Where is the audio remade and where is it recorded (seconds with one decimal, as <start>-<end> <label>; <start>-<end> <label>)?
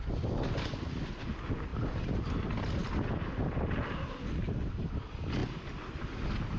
0.0-6.6 recorded